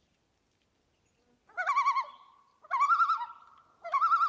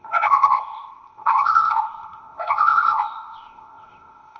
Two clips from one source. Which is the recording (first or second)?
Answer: first